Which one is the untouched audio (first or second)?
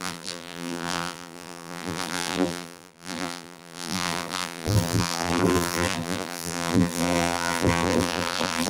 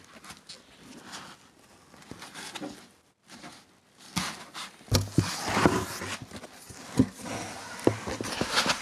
second